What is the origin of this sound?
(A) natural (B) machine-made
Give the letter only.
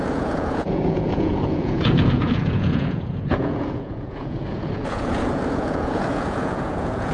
B